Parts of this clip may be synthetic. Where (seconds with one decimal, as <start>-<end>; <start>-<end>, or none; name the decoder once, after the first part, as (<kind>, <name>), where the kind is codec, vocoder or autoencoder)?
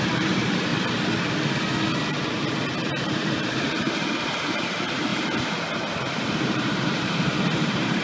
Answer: 0.0-0.7 (vocoder, BigVGAN v2); 3.0-5.1; 6.0-8.0